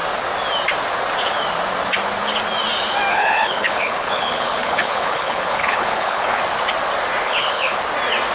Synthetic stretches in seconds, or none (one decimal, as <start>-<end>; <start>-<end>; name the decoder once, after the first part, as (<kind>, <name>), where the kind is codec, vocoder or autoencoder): 3.1-6.4 (codec, HILCodec); 7.2-7.8